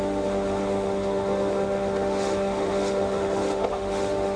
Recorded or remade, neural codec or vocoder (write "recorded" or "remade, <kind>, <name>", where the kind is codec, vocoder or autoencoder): remade, autoencoder, DAC-VAE